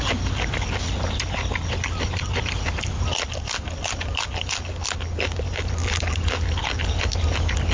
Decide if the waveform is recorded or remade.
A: recorded